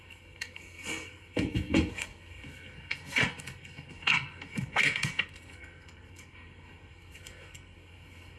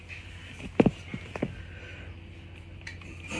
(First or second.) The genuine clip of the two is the second